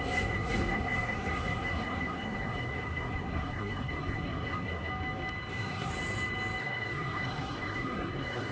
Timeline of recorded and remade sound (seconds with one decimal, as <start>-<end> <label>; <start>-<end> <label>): 0.0-4.9 remade; 4.9-5.5 recorded; 5.5-5.9 remade; 5.9-6.6 recorded; 6.6-8.5 remade